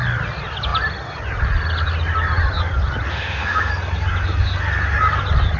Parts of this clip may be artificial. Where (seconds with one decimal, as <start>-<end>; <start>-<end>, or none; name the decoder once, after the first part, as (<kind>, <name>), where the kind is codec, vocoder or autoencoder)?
3.1-3.7 (autoencoder, DAC-VAE)